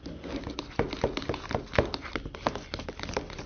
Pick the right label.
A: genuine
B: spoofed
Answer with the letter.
A